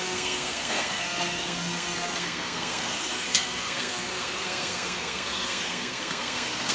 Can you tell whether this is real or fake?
fake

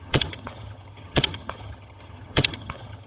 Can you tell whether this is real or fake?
fake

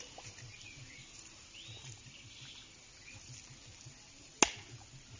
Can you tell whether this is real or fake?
real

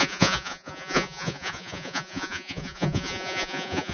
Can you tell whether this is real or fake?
fake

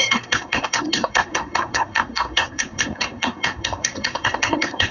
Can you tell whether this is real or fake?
fake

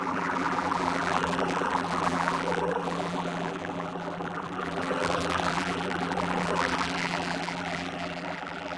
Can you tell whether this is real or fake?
fake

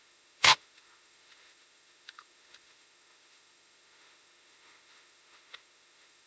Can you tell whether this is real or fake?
fake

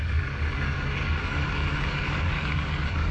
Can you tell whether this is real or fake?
fake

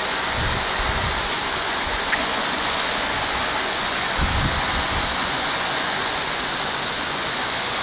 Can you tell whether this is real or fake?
fake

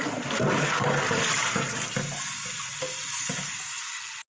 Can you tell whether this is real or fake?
real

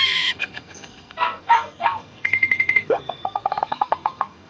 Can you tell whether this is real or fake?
fake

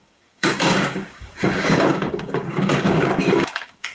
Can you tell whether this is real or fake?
fake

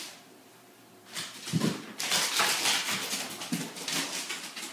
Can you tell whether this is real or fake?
real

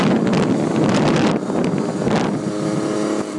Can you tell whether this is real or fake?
real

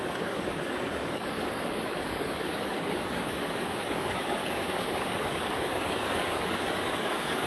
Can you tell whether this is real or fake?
fake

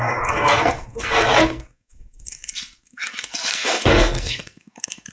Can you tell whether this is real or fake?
fake